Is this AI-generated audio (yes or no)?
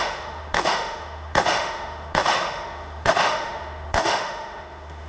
yes